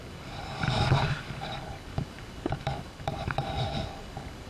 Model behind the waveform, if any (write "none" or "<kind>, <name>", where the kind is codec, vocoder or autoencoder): codec, DAC